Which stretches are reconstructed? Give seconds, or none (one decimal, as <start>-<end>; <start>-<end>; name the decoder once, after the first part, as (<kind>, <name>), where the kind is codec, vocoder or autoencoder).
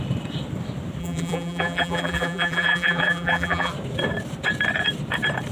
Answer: 1.0-3.7 (vocoder, BigVGAN v2)